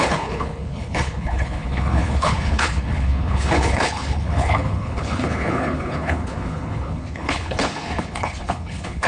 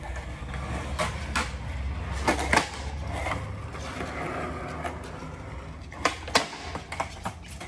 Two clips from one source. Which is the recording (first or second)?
second